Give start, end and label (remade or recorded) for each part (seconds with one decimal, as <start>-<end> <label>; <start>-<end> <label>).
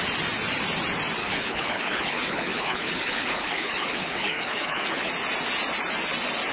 0.0-1.2 recorded; 1.2-5.1 remade; 5.1-6.5 recorded